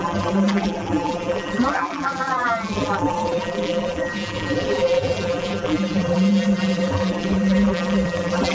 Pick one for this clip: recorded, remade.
remade